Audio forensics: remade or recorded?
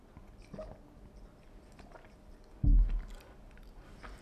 recorded